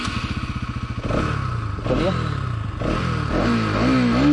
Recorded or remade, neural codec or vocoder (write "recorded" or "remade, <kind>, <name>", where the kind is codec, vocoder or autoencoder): recorded